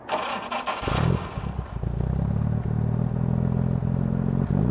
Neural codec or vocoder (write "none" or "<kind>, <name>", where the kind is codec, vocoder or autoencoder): none